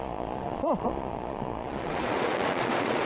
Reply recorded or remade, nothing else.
remade